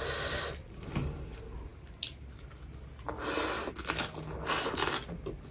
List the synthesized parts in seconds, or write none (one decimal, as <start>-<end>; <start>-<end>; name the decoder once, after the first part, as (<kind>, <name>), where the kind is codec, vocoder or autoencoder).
none